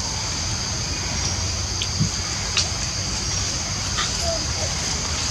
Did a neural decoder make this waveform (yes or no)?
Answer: no